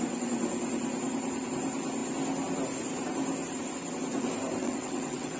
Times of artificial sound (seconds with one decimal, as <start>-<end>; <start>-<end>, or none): 4.6-5.4